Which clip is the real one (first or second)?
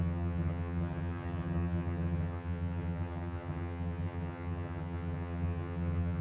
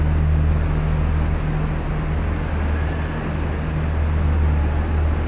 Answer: second